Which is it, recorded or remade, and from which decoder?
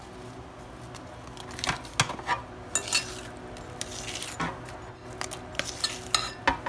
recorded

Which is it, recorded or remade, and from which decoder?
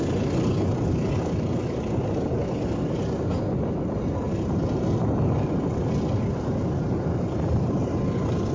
recorded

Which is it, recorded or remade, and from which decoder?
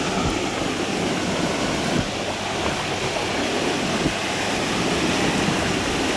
recorded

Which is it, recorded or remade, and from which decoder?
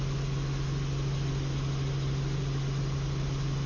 recorded